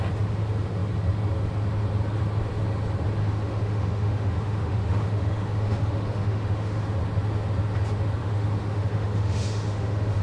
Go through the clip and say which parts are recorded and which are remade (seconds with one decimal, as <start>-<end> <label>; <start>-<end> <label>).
0.0-3.2 recorded; 3.2-6.8 remade; 6.8-8.2 recorded; 8.2-10.2 remade